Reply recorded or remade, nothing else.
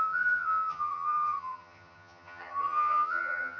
remade